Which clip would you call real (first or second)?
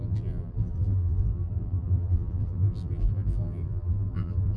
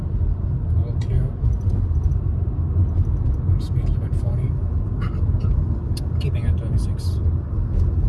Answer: second